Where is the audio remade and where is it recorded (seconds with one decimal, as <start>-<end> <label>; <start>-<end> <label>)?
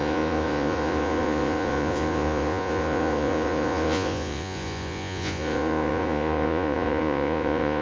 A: 0.0-7.8 remade